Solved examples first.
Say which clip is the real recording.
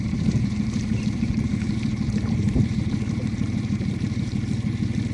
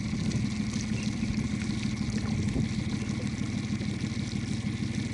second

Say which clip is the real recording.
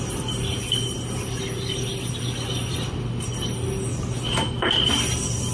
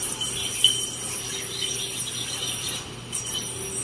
second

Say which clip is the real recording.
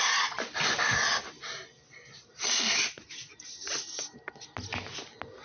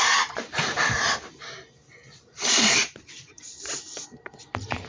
first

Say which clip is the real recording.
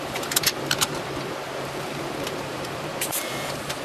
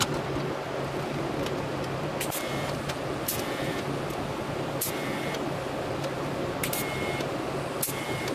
second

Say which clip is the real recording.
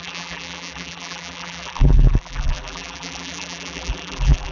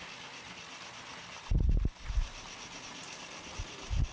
second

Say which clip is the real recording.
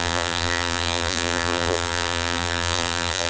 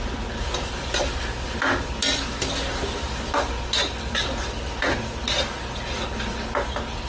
second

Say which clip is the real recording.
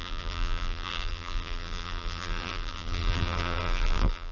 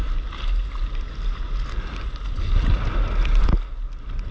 second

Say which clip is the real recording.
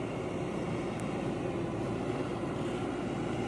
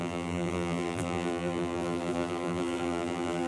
first